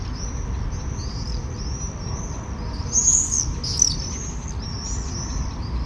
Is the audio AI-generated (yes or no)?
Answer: no